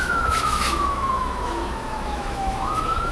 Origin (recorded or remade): remade